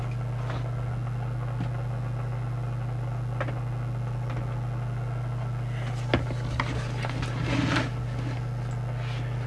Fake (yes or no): no